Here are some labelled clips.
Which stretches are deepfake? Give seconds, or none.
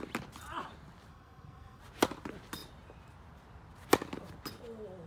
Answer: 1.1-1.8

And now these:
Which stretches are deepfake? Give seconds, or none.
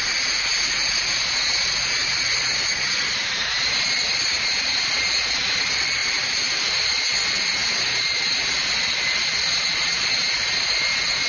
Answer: none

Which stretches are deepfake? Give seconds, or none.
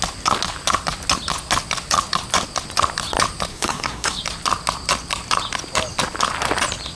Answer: 3.5-4.2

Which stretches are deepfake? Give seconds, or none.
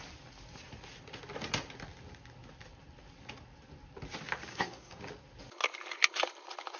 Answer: 4.5-5.0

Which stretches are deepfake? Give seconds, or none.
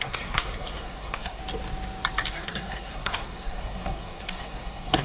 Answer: 0.0-1.4; 2.3-5.0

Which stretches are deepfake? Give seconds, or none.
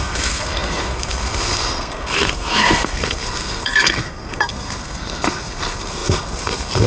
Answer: 0.0-6.9